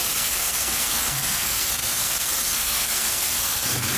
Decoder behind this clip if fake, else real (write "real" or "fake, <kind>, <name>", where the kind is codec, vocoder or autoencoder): fake, codec, SNAC